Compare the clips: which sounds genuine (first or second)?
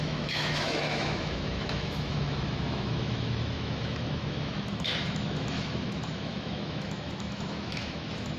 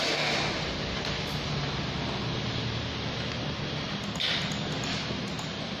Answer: second